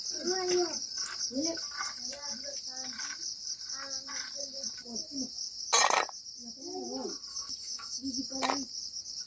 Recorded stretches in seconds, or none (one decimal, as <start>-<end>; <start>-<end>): 0.0-7.3; 8.2-9.3